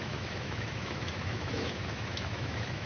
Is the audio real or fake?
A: fake